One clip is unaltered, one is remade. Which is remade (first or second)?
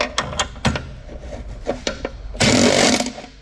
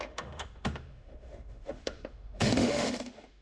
second